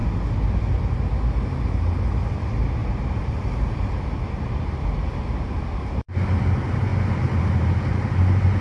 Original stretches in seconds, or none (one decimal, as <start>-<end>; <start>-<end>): 0.0-2.8; 3.7-8.6